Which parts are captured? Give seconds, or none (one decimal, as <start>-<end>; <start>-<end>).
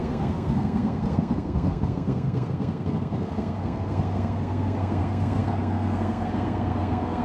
none